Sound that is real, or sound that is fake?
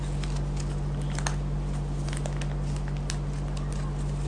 real